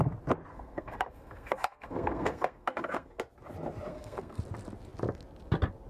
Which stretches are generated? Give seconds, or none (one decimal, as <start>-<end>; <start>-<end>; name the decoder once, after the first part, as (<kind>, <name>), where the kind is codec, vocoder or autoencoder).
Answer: 0.5-3.2 (codec, SNAC); 3.9-4.4